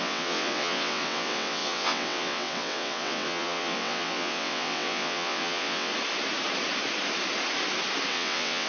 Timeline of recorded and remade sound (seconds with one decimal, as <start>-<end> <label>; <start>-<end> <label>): 0.0-5.9 remade; 5.9-8.1 recorded; 8.1-8.7 remade